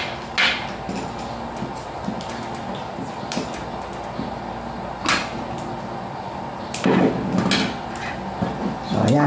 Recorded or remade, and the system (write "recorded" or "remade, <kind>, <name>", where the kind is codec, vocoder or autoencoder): recorded